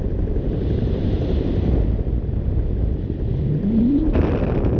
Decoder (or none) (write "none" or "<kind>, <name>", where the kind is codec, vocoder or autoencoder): none